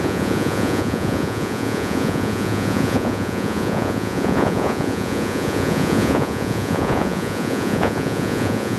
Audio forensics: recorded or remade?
remade